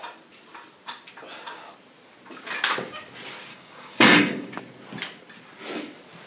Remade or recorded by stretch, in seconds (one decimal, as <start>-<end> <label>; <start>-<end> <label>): 0.0-3.5 recorded; 3.5-4.5 remade; 4.5-6.3 recorded